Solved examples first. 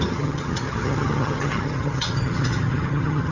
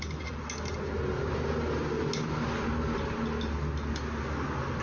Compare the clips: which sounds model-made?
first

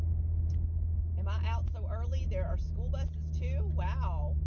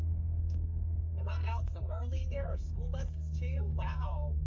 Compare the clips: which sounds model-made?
second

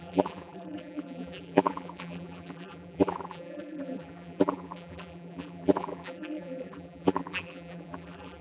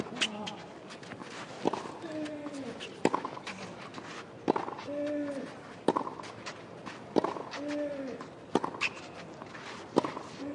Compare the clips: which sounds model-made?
first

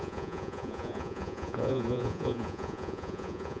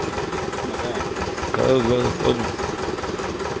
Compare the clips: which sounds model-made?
first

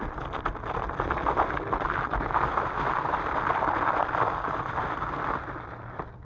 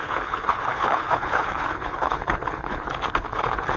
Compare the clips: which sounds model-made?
second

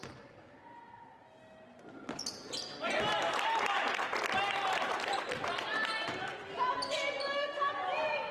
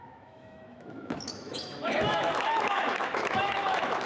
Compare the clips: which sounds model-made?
second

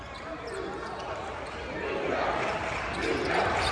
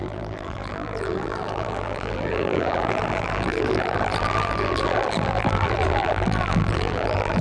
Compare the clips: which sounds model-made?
second